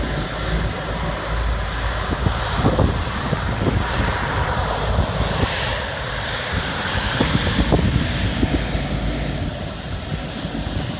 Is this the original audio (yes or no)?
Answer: yes